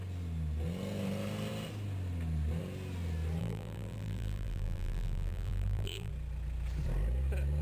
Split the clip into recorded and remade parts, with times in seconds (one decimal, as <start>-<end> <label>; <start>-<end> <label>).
0.0-3.4 recorded; 3.4-6.1 remade; 6.1-7.6 recorded